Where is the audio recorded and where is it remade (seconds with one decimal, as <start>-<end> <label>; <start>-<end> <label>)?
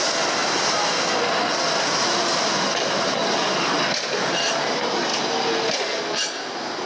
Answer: 0.0-6.9 recorded